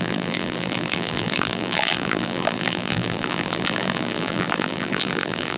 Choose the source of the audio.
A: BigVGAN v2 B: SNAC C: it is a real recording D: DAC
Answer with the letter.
A